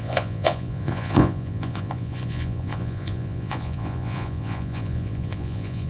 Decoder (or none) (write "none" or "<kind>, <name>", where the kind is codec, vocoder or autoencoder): vocoder, Vocos